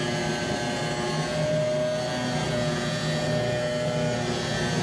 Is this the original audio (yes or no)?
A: yes